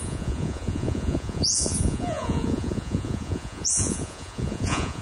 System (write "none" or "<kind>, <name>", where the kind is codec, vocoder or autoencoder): vocoder, Vocos